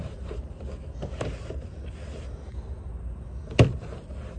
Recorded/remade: recorded